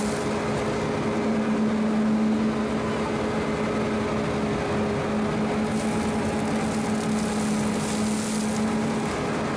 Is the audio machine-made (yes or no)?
no